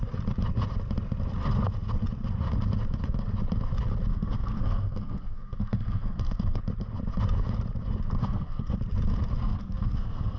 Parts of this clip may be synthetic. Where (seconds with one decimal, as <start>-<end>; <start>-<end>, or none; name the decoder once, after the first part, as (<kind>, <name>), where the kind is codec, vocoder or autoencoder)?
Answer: 4.1-6.6 (codec, SNAC); 8.2-8.8; 9.4-10.4